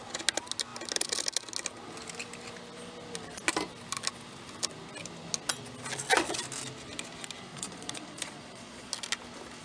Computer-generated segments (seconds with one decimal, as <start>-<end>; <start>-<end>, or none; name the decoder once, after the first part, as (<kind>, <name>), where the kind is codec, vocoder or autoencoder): 7.5-8.9 (vocoder, Vocos)